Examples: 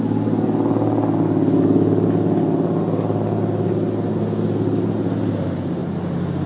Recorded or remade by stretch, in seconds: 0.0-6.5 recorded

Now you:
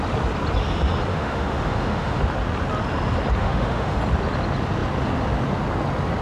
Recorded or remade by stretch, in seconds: 0.0-1.1 recorded; 1.1-2.2 remade; 2.2-3.4 recorded; 3.4-4.0 remade; 4.0-6.2 recorded

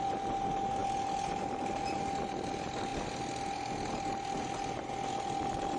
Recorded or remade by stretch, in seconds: 0.0-5.8 recorded

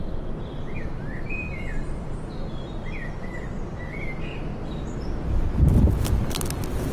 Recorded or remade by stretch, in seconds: 0.0-6.9 recorded

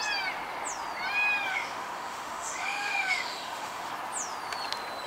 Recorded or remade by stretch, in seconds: 0.0-1.5 recorded; 1.5-3.9 remade; 3.9-5.1 recorded